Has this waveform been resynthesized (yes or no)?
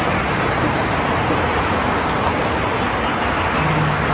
no